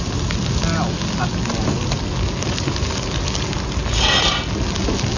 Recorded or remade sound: recorded